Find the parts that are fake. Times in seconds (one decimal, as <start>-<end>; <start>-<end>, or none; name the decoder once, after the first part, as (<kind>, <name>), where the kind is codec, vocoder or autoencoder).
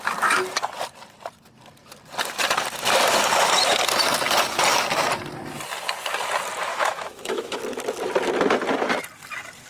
6.7-7.6 (autoencoder, DAC-VAE)